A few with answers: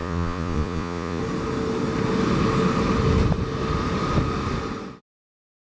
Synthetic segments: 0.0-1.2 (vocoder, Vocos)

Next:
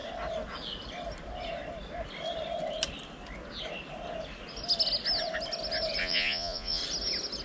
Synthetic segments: 6.0-6.8 (vocoder, Vocos)

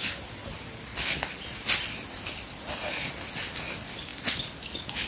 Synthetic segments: none

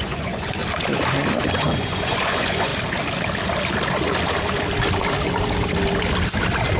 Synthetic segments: 0.0-0.6 (vocoder, Vocos); 1.5-2.7

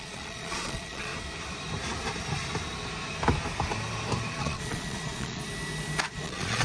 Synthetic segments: 0.0-1.1 (vocoder, Vocos); 4.4-5.4; 6.1-6.6

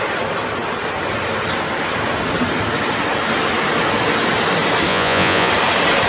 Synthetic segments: 4.9-5.5 (vocoder, Vocos)